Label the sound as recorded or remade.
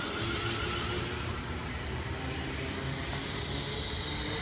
recorded